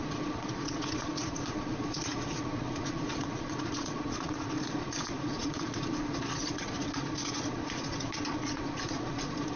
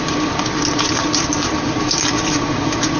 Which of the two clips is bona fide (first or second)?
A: second